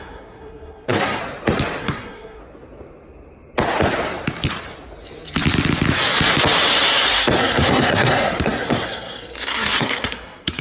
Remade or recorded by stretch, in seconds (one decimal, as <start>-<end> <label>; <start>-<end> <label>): 0.0-1.2 remade; 1.2-1.8 recorded; 1.8-2.4 remade; 2.4-7.4 recorded; 7.4-10.6 remade